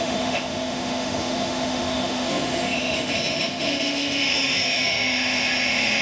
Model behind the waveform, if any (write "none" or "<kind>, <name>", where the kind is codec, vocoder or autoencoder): autoencoder, DAC-VAE